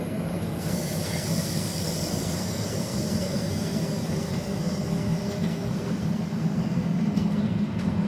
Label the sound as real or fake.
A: fake